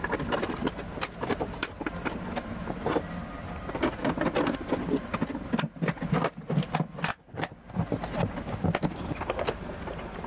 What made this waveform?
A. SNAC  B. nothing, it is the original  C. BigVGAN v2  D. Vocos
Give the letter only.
B